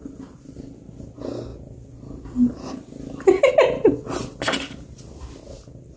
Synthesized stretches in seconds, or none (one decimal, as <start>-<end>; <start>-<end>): none